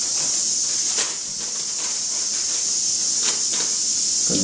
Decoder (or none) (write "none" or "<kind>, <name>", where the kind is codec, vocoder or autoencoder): none